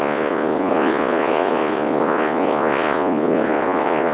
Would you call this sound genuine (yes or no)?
no